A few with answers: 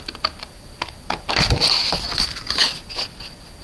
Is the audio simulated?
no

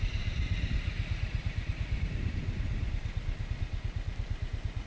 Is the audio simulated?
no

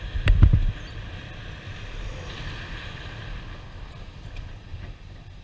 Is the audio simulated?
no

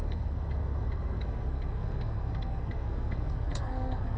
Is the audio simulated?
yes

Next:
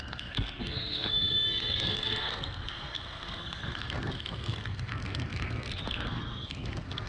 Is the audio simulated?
yes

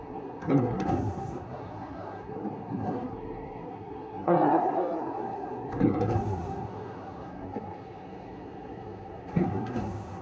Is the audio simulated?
yes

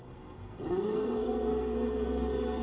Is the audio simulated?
yes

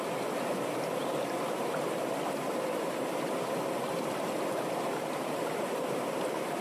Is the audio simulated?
no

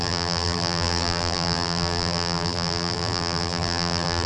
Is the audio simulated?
yes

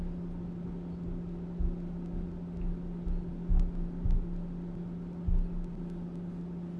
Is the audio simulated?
no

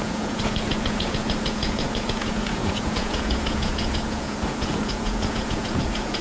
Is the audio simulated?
yes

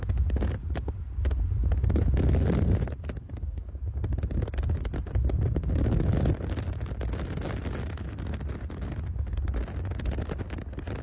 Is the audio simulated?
no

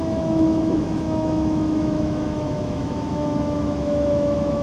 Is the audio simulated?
yes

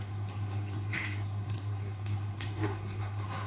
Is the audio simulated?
yes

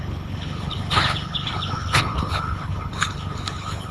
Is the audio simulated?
yes